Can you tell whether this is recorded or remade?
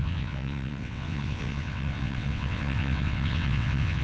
remade